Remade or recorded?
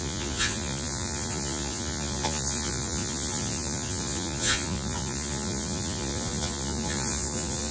remade